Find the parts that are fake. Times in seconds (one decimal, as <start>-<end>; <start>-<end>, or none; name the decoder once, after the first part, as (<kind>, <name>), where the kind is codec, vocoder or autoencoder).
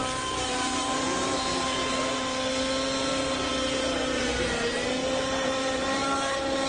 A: 0.0-1.5 (vocoder, BigVGAN v2); 3.1-3.5; 4.2-6.0